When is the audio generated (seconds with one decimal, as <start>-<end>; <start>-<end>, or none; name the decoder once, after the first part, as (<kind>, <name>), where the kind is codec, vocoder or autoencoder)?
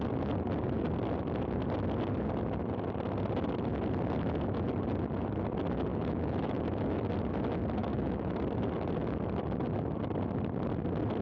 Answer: 5.9-7.1 (autoencoder, DAC-VAE); 7.8-8.3